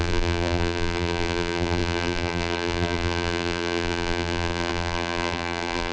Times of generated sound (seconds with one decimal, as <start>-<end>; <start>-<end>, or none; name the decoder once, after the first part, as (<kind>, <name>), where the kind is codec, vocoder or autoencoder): 0.0-5.9 (vocoder, BigVGAN v2)